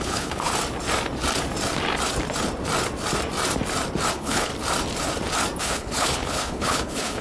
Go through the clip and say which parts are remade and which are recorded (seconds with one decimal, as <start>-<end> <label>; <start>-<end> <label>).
0.0-0.5 remade; 0.5-4.1 recorded; 4.1-4.5 remade; 4.5-5.6 recorded; 5.6-7.2 remade